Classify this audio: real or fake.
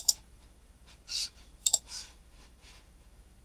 fake